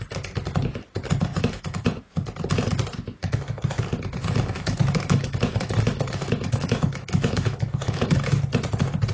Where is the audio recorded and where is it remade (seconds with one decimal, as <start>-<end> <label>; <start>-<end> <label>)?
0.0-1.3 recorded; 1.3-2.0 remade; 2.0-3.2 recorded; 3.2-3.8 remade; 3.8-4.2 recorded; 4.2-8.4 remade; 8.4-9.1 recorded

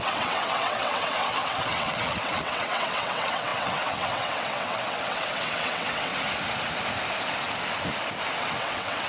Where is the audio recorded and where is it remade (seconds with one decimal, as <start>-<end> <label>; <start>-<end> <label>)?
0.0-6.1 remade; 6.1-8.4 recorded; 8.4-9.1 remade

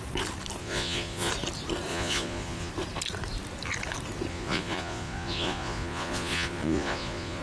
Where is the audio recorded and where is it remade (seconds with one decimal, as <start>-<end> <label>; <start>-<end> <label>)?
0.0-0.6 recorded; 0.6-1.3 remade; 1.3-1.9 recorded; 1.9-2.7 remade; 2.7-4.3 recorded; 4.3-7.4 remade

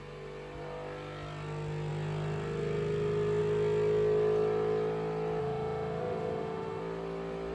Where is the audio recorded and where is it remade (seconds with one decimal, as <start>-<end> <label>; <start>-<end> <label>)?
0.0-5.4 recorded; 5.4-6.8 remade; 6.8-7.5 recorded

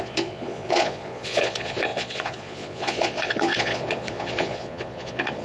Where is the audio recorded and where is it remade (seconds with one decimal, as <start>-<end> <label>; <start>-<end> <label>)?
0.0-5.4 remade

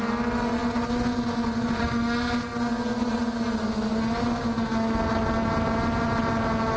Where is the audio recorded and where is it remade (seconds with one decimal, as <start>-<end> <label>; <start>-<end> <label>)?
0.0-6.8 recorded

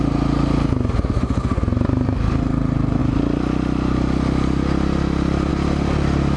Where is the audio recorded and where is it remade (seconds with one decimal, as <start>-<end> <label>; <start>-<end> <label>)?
0.0-6.4 recorded